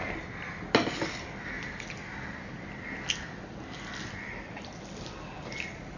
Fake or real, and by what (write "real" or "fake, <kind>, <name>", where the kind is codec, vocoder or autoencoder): real